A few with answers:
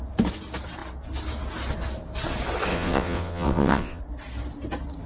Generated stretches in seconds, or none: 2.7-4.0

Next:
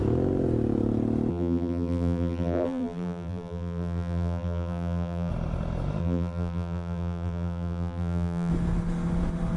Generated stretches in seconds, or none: 1.3-5.3; 6.0-8.5

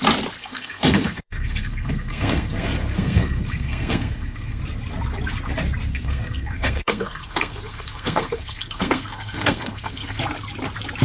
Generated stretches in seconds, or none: 0.4-4.6; 5.9-10.2

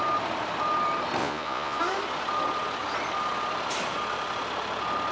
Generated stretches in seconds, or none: 1.2-1.8

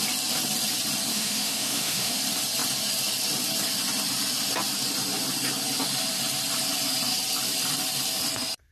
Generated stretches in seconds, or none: 1.1-2.2

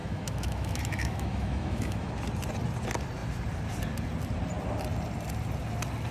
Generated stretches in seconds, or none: 0.0-2.1

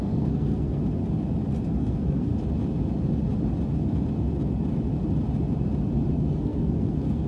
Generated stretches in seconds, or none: 0.0-0.8; 1.7-2.3; 6.1-7.3

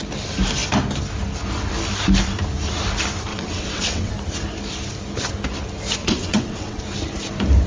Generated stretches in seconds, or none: 3.3-4.1; 6.0-6.8